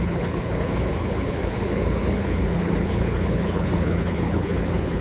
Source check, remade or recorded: remade